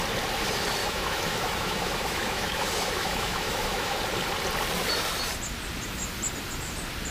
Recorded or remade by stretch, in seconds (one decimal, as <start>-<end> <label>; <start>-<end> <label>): 0.0-0.8 recorded; 0.8-4.0 remade; 4.0-7.1 recorded